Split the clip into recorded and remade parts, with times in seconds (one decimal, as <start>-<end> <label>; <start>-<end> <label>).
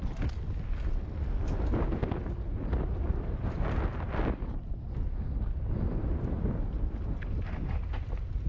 0.0-8.5 recorded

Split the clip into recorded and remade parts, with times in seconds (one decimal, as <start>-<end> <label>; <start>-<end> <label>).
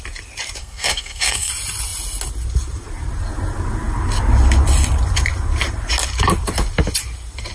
0.0-0.6 recorded; 0.6-1.5 remade; 1.5-7.5 recorded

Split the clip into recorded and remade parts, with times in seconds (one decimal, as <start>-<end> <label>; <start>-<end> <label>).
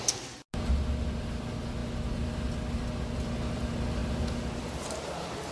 0.0-5.5 recorded